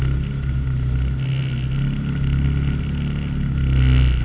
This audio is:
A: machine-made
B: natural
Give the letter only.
B